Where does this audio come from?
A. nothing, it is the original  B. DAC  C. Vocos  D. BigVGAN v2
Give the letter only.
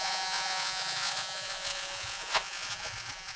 C